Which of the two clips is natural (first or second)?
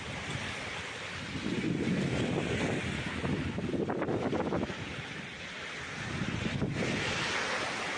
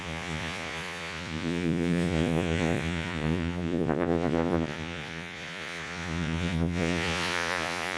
first